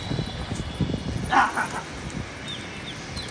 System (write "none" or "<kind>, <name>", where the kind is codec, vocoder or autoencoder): none